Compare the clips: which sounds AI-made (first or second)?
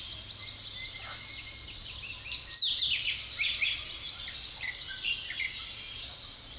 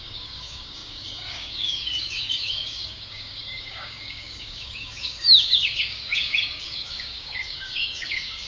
second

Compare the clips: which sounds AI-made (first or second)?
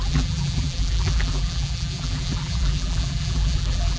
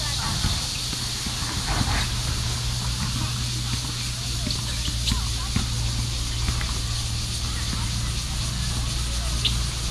first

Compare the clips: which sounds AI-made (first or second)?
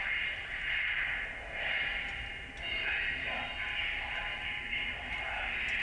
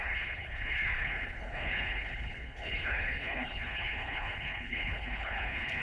second